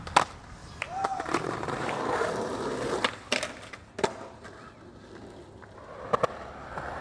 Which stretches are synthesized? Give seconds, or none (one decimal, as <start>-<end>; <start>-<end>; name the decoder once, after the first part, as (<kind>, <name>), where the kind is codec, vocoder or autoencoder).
0.6-2.0 (vocoder, BigVGAN v2)